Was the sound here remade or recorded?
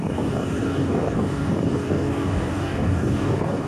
remade